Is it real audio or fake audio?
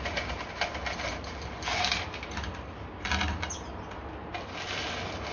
real